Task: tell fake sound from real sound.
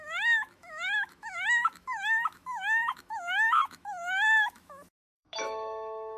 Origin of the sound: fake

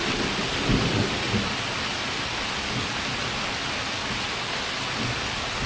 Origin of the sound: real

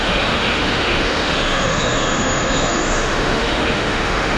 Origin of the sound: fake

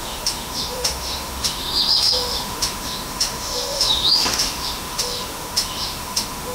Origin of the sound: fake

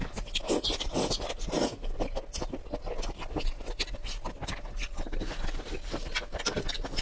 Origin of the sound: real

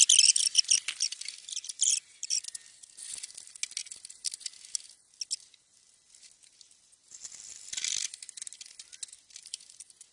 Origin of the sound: real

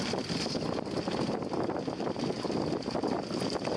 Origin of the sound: real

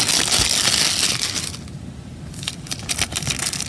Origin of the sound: real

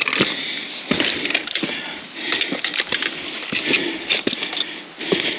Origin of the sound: real